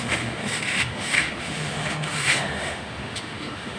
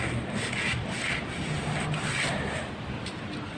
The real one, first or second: second